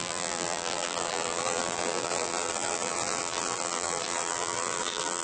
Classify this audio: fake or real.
fake